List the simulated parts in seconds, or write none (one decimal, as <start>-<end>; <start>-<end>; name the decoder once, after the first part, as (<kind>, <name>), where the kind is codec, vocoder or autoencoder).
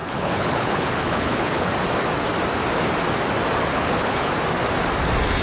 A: 0.0-1.7 (codec, HILCodec); 3.7-4.3